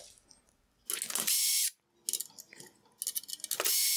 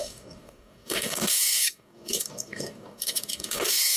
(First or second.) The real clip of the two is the first